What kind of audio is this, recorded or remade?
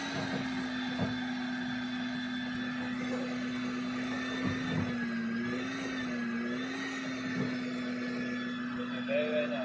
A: recorded